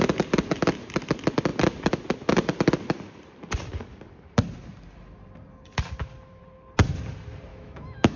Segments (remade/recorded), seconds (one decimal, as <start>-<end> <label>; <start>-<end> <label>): 0.0-7.5 recorded; 7.5-8.2 remade